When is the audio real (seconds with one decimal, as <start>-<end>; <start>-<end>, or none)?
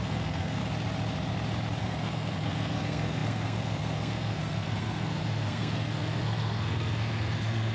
0.6-1.8